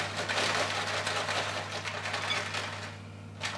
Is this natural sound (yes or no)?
yes